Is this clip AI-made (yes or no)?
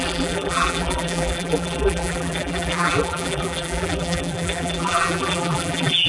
yes